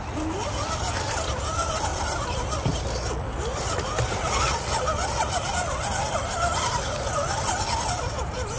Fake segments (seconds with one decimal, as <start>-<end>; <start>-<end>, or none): 1.9-2.5